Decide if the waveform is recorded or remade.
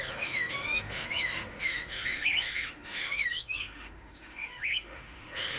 remade